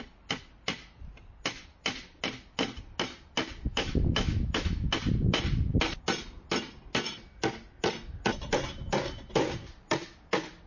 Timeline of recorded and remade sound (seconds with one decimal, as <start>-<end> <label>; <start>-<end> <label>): 0.0-3.7 recorded; 3.7-4.9 remade; 4.9-10.7 recorded